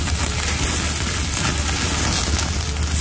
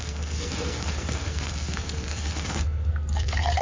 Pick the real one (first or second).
first